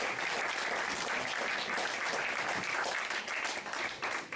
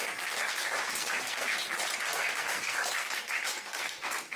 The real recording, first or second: first